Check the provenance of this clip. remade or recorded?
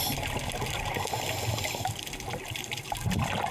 recorded